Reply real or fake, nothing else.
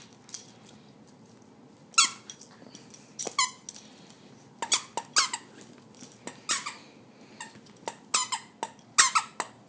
real